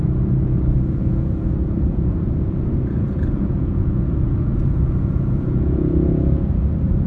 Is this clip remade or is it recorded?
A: remade